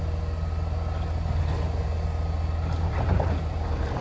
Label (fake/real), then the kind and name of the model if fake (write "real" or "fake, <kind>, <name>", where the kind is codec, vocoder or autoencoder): real